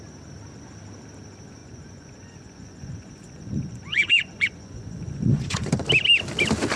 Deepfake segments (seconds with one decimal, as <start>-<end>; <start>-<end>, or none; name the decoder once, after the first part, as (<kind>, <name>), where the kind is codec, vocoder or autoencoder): 1.6-5.7 (vocoder, Vocos)